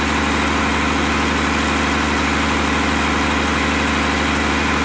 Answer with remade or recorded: recorded